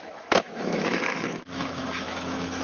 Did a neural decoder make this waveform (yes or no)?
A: yes